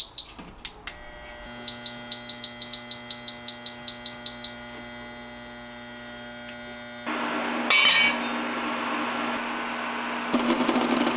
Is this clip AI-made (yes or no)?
no